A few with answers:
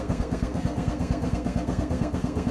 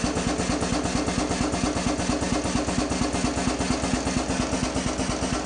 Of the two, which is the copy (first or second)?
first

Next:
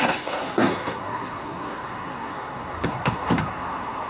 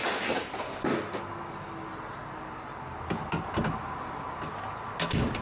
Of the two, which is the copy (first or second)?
first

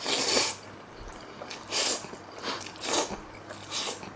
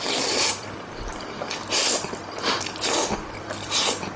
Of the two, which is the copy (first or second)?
second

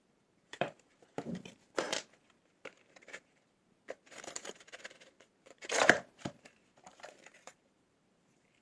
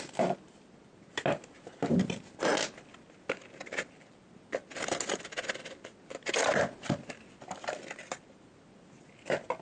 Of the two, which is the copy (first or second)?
first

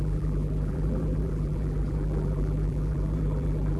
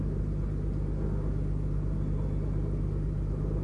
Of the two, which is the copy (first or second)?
first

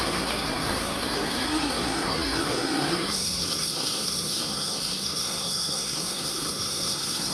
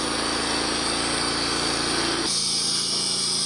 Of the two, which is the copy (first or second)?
first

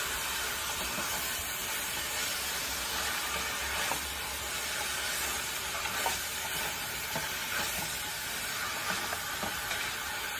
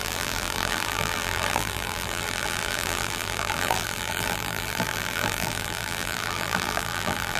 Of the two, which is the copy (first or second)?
second